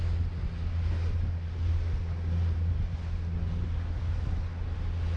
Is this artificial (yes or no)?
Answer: no